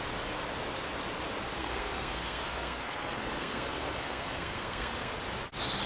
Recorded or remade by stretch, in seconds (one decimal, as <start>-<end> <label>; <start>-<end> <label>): 0.0-1.6 recorded; 1.6-5.1 remade; 5.1-5.9 recorded